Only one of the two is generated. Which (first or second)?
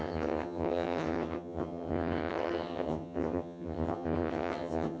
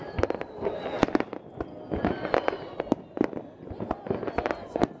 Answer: first